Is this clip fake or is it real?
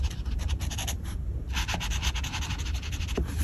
real